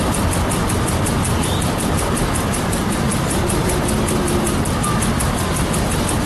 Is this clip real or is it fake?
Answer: real